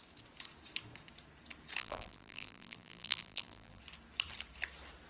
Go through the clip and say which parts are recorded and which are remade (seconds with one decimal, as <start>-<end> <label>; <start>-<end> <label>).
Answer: 0.0-1.8 recorded; 1.8-3.8 remade; 3.8-5.1 recorded